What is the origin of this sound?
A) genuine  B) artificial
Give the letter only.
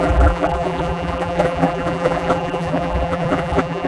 B